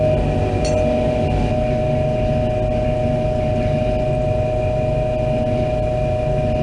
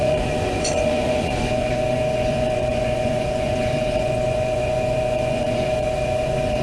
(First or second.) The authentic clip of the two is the first